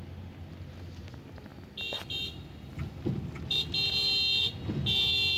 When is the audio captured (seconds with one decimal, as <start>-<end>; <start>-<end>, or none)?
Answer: 0.0-5.4